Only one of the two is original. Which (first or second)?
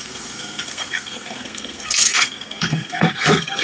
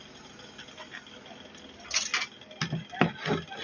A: second